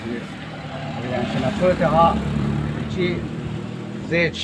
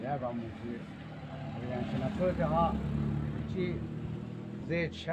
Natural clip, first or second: second